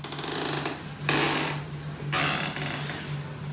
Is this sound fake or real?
real